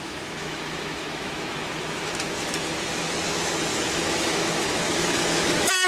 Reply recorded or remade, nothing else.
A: remade